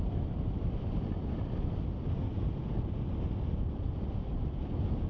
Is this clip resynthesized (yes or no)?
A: no